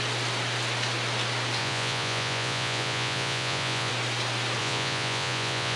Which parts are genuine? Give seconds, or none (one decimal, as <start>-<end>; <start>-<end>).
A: 0.0-1.6; 3.9-4.6